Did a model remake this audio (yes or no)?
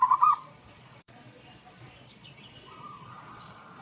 yes